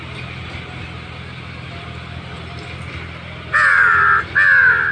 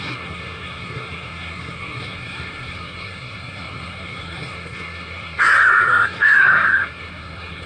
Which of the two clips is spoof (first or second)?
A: second